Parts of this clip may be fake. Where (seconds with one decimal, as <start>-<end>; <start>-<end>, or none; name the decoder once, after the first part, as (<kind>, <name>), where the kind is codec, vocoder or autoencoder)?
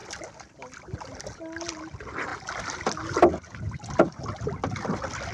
none